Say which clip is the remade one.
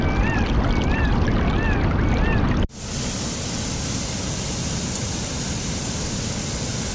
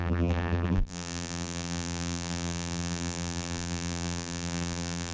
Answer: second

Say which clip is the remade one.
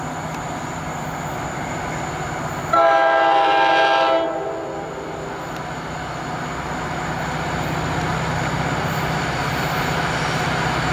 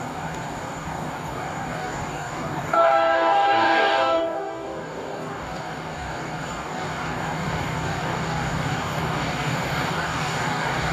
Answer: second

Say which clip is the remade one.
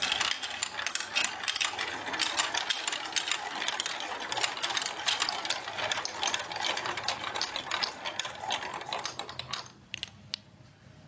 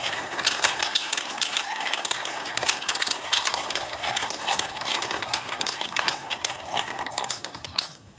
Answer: second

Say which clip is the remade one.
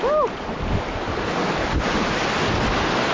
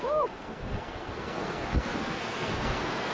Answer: second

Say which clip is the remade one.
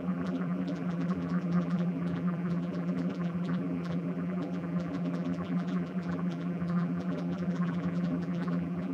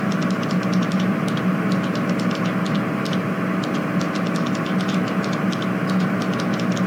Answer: first